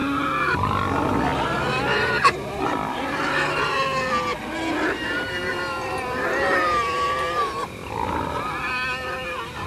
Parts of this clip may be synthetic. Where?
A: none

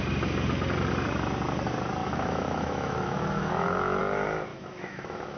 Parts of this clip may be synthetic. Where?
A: 2.0-4.0 (autoencoder, DAC-VAE); 4.5-5.4

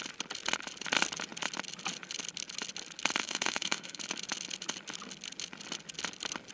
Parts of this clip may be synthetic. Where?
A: 3.2-4.0 (autoencoder, DAC-VAE)

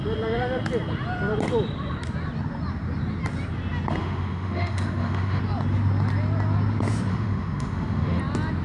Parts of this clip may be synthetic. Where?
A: 4.0-5.4 (autoencoder, DAC-VAE); 7.1-8.2

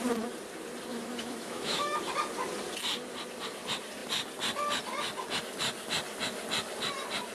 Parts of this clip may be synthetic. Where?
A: 0.9-2.0 (autoencoder, DAC-VAE)

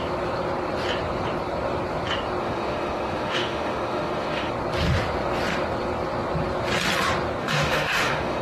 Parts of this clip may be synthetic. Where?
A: 2.4-4.5 (autoencoder, DAC-VAE); 7.4-8.4